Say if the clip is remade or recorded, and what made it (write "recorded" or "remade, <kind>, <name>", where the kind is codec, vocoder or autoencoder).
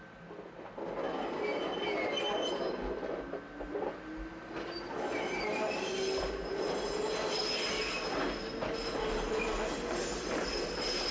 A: recorded